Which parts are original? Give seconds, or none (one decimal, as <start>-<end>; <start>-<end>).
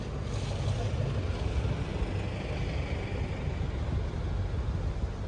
0.0-5.3